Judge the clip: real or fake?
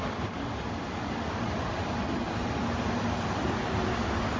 real